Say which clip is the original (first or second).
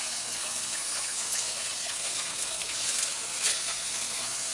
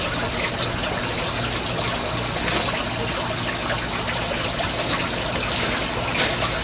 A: second